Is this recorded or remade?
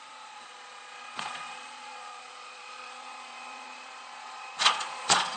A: remade